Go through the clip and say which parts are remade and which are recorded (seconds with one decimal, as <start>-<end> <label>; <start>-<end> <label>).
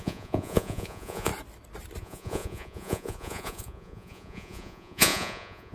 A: 0.0-1.3 remade; 1.3-2.0 recorded; 2.0-5.7 remade